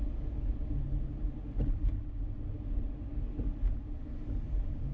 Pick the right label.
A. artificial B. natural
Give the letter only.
B